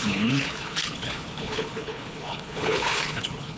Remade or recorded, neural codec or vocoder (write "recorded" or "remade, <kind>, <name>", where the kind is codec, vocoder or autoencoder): remade, codec, HILCodec